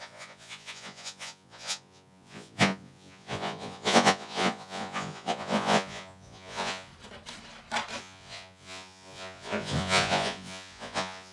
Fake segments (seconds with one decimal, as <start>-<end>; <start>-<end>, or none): 0.0-6.9; 8.0-11.3